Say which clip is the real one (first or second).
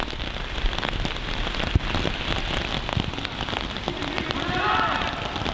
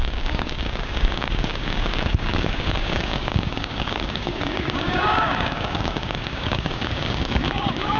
first